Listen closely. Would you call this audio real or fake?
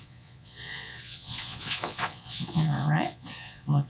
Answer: fake